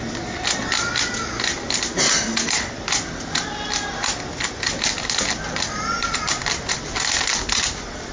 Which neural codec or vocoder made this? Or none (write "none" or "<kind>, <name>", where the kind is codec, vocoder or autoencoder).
none